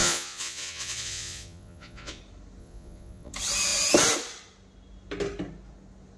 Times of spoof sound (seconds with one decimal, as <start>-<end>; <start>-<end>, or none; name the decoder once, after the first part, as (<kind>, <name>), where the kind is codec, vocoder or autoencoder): 0.0-2.2 (vocoder, Vocos); 2.6-3.3

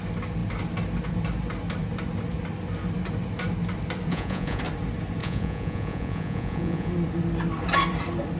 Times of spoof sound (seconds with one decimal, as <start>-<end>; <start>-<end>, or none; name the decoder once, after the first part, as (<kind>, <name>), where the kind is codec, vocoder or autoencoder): 4.1-4.6 (vocoder, Vocos); 5.2-6.9

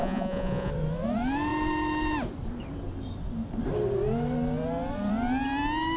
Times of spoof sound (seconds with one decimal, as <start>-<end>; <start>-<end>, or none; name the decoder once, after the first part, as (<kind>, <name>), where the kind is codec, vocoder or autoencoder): 0.0-0.7 (vocoder, Vocos)

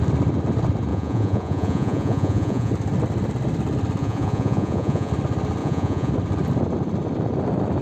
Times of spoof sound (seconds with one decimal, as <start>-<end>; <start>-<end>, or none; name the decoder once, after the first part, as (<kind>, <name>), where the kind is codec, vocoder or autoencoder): 0.9-2.7 (vocoder, Vocos); 4.0-5.1; 5.6-6.1

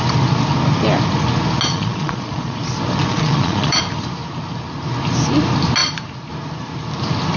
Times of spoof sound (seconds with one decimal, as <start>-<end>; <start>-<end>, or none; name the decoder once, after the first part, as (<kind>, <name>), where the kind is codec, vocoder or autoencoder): 1.7-2.6 (vocoder, Vocos); 3.1-3.8

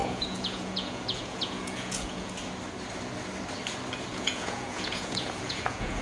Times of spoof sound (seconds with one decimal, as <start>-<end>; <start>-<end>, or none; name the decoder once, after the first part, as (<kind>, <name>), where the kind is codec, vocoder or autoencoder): 0.0-2.3 (vocoder, Vocos); 4.1-6.0

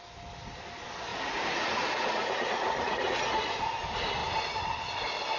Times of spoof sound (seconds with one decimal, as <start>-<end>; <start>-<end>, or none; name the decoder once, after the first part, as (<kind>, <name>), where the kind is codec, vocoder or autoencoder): 1.1-3.6 (vocoder, Vocos)

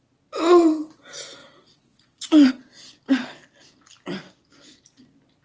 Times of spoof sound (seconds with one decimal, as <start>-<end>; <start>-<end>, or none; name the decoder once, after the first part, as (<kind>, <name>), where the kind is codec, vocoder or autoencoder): 1.4-2.5 (vocoder, Vocos)